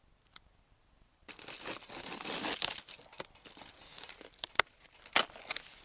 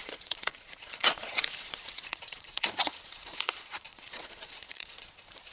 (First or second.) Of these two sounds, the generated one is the second